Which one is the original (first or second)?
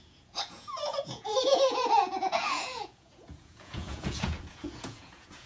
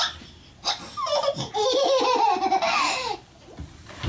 second